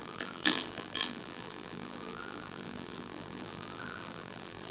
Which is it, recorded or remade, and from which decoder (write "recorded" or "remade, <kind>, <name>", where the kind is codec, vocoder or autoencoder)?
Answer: remade, vocoder, BigVGAN v2